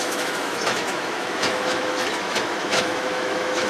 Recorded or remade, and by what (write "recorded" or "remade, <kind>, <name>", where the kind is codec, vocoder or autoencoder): remade, autoencoder, DAC-VAE